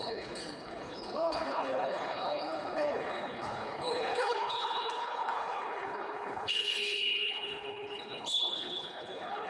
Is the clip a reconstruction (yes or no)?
yes